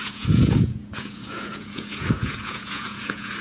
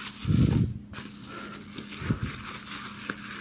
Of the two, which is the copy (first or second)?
first